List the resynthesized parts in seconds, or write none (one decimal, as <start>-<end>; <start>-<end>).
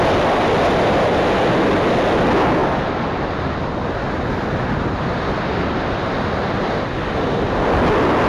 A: none